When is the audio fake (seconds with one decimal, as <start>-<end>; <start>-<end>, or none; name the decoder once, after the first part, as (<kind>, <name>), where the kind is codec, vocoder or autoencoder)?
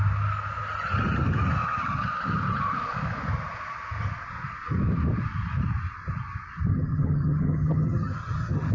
6.7-8.7 (vocoder, HiFi-GAN)